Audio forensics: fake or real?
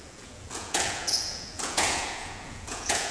fake